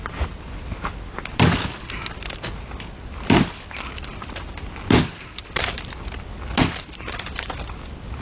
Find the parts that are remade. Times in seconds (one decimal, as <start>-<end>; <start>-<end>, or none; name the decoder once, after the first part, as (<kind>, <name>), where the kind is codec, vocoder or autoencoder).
none